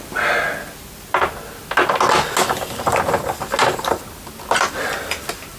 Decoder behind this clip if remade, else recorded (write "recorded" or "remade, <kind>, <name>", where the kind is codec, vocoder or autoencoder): recorded